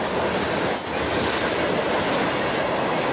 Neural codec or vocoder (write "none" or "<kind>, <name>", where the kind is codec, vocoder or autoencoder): none